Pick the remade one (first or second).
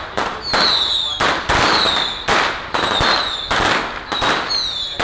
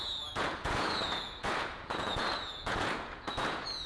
second